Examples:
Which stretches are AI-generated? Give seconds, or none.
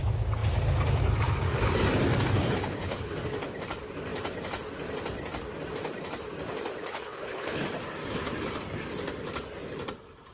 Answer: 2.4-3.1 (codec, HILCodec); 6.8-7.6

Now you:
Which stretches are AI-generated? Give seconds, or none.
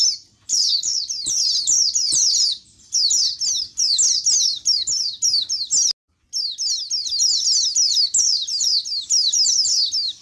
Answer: 0.5-1.0 (codec, HILCodec)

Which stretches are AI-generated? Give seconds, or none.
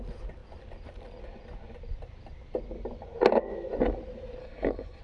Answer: 4.4-5.0 (codec, HILCodec)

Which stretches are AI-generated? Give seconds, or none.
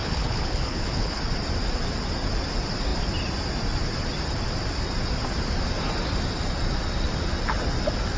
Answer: 0.0-1.2 (codec, HILCodec)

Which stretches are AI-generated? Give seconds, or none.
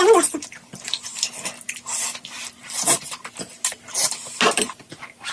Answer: none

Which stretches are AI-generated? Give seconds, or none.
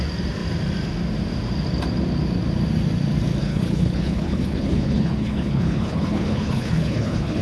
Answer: 3.4-7.4 (codec, HILCodec)